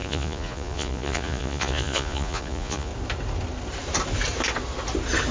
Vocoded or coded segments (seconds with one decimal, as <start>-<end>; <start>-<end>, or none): 0.0-2.9